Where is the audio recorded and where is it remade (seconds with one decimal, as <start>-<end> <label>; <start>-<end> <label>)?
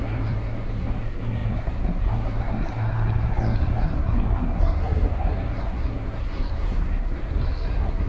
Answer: 0.0-8.1 remade